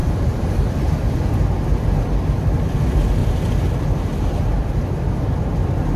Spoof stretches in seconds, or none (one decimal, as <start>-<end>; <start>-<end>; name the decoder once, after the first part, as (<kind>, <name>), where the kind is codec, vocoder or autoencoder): 0.0-0.9 (vocoder, BigVGAN v2)

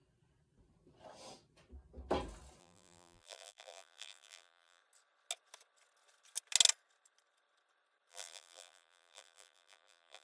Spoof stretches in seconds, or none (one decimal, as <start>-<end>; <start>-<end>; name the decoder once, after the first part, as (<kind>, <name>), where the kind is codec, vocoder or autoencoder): 2.6-4.8 (vocoder, BigVGAN v2); 8.1-10.2

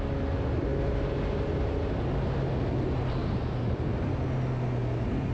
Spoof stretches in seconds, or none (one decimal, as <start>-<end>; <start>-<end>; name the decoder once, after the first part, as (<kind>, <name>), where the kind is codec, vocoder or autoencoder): 3.2-3.8 (vocoder, BigVGAN v2)

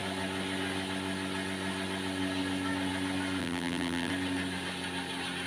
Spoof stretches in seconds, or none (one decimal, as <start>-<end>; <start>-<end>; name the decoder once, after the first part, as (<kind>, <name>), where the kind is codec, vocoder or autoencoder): 3.4-4.1 (vocoder, BigVGAN v2)

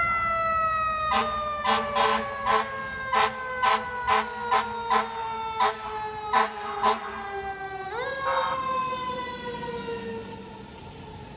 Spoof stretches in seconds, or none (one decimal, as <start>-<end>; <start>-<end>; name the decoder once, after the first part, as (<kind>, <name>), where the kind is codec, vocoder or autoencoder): 5.2-7.1 (vocoder, BigVGAN v2)